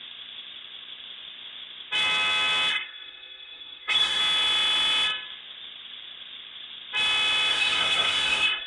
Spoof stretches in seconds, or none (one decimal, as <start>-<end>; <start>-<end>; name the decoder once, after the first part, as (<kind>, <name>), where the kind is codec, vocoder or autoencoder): 2.7-4.2 (codec, SNAC); 7.5-8.7